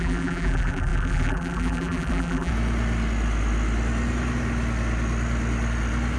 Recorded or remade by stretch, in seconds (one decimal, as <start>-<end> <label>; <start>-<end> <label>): 0.0-2.5 remade; 2.5-6.2 recorded